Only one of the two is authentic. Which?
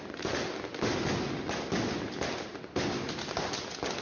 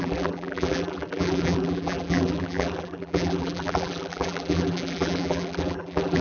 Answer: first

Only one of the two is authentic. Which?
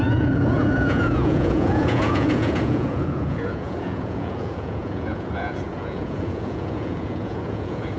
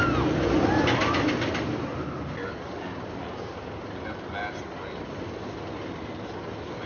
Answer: second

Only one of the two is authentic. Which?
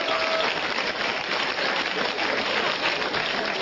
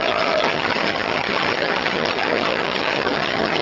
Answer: first